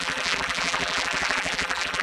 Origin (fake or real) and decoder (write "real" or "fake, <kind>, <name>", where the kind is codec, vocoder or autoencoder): fake, vocoder, BigVGAN v2